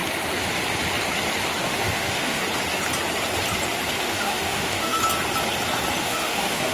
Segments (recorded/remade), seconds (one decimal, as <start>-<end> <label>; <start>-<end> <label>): 0.0-1.6 recorded; 1.6-2.4 remade; 2.4-4.0 recorded; 4.0-5.0 remade; 5.0-6.0 recorded; 6.0-6.7 remade